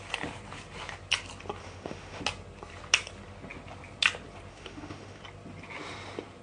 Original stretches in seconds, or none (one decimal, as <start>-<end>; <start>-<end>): 0.0-1.6; 2.2-4.5; 5.2-6.4

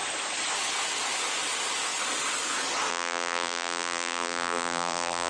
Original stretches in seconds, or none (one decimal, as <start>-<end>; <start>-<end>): 0.0-2.9

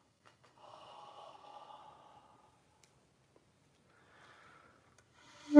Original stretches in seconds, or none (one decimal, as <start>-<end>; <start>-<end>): 1.8-5.6